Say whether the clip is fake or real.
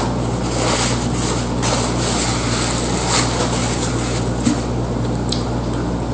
real